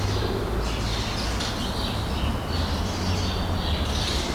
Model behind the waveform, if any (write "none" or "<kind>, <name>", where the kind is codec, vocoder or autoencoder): none